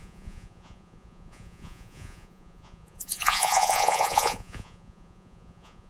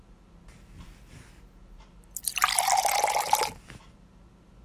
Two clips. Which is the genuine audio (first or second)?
second